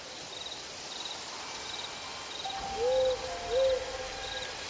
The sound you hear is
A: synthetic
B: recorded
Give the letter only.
B